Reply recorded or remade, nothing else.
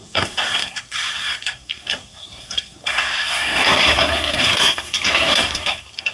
remade